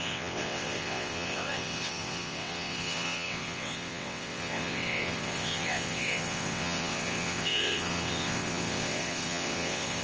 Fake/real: fake